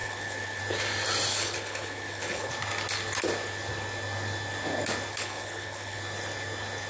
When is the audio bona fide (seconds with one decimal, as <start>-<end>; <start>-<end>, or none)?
0.6-1.3; 2.5-5.1; 6.0-6.9